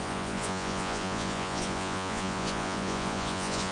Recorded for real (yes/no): no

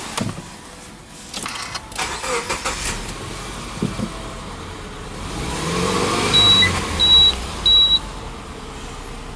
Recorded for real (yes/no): yes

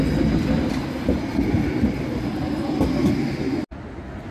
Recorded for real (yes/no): yes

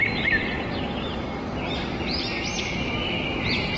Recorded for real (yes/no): no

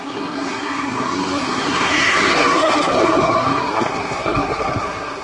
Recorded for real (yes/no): no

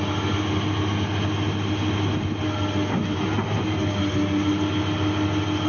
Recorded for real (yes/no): yes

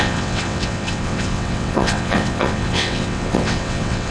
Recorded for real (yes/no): no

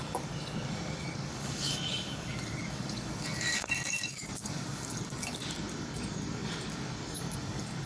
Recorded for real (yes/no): no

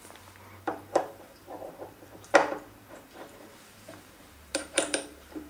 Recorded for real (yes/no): no